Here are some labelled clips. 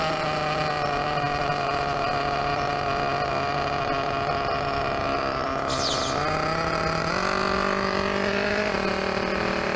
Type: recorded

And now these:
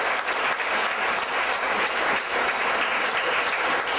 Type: remade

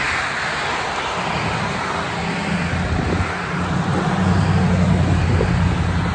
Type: recorded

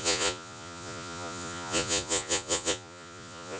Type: remade